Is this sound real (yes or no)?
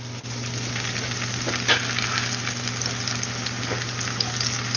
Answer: yes